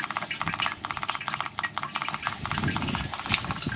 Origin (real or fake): real